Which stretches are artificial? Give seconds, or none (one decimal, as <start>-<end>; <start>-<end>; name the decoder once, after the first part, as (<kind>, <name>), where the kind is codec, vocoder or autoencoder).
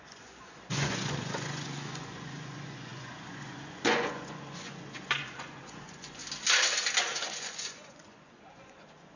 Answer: 0.0-6.2 (vocoder, Vocos); 7.0-9.2